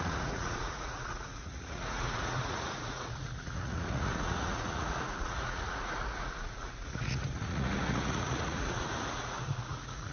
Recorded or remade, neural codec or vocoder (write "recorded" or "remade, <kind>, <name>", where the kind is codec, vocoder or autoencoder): remade, vocoder, Vocos